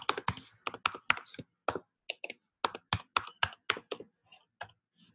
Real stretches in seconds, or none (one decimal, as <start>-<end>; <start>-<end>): 0.0-5.1